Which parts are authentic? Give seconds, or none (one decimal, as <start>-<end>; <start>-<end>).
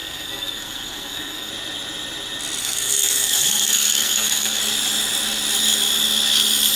1.5-2.6; 4.6-6.8